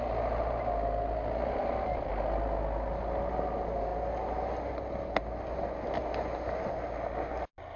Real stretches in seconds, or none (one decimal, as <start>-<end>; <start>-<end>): 0.0-1.6; 2.1-7.8